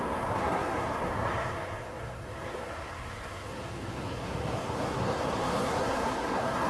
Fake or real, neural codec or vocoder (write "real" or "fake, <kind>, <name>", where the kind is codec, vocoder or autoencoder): fake, codec, SNAC